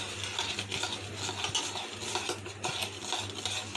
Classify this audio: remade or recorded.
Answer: recorded